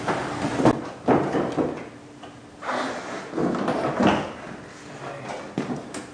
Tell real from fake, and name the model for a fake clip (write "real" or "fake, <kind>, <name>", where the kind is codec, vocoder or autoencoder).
real